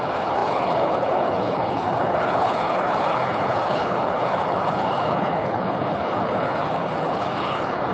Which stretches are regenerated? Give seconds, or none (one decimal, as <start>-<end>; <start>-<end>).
0.0-7.9